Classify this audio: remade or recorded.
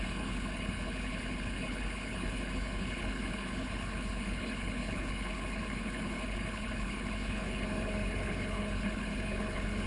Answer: remade